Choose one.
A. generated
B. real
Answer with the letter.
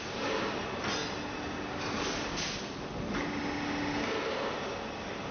B